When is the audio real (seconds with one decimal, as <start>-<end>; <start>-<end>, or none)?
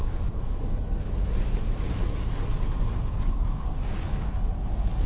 none